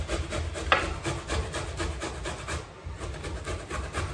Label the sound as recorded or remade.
recorded